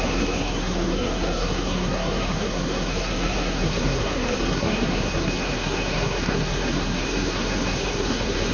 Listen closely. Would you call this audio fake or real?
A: fake